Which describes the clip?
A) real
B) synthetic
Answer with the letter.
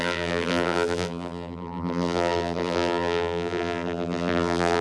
B